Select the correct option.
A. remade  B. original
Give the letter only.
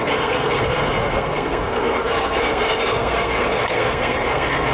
A